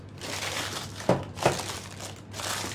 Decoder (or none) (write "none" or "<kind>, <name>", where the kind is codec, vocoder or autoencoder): none